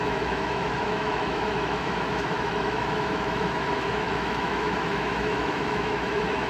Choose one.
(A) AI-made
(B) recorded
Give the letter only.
A